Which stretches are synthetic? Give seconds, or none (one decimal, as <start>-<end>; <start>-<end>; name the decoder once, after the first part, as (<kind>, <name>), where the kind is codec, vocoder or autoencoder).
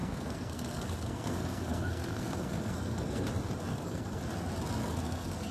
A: 0.0-3.3 (codec, SNAC); 3.7-4.2; 4.8-5.5